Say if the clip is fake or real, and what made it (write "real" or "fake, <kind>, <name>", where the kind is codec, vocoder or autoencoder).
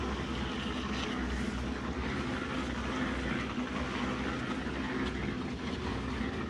real